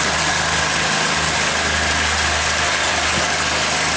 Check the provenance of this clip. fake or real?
real